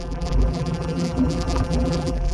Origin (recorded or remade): remade